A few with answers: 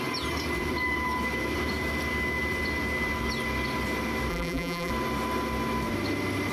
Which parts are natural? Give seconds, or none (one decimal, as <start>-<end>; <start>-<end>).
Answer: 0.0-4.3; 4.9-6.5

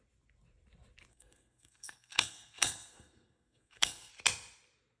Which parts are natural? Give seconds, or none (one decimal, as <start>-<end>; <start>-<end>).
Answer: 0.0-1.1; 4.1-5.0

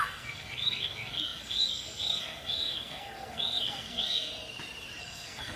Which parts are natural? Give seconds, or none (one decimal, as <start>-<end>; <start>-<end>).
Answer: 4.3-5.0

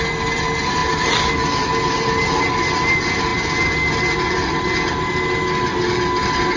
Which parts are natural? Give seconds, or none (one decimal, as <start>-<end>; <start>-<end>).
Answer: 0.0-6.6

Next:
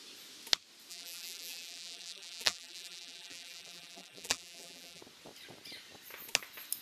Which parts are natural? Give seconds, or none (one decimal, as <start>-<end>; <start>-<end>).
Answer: 0.0-0.9; 5.0-6.8

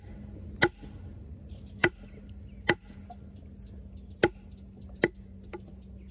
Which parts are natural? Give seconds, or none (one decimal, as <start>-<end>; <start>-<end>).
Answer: 0.0-6.1

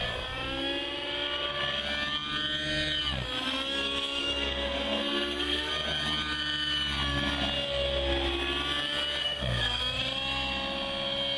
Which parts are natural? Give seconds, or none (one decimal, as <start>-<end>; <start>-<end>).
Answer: 0.0-4.2; 5.7-9.2; 9.8-11.4

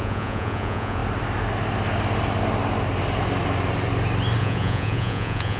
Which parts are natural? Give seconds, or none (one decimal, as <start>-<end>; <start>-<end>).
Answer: 1.0-4.4